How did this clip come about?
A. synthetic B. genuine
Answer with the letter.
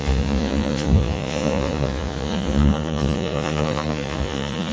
A